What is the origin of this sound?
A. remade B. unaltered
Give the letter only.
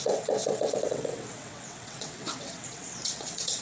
A